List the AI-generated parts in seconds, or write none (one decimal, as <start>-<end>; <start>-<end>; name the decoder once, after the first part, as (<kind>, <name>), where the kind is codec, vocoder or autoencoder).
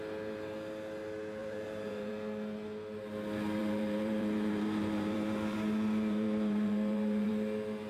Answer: 1.4-2.1 (vocoder, BigVGAN v2); 3.6-7.3